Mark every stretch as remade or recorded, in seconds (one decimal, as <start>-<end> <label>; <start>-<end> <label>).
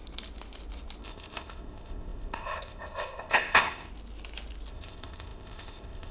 0.0-1.0 recorded; 1.0-3.9 remade; 3.9-4.7 recorded; 4.7-6.1 remade